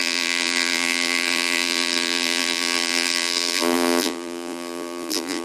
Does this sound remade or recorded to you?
remade